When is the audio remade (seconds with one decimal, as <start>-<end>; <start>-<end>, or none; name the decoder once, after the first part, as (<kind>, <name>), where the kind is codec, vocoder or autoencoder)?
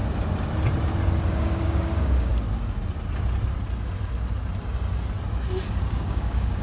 1.3-2.3 (codec, DAC); 5.8-6.6